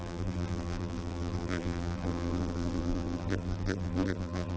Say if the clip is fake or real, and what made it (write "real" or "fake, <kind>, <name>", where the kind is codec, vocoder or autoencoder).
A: fake, vocoder, BigVGAN v2